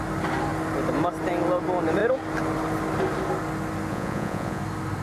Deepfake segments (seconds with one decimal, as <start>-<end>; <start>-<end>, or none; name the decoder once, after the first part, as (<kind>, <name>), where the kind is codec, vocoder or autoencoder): 3.9-4.6 (vocoder, Vocos)